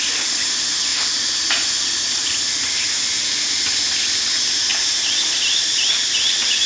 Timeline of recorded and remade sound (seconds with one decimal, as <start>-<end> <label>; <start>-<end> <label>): 0.0-6.7 recorded